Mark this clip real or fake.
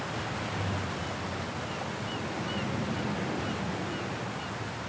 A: real